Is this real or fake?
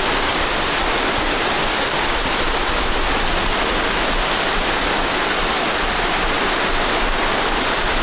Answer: real